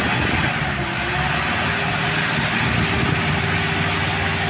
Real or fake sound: real